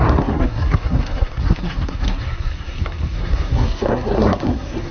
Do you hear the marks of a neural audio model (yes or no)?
yes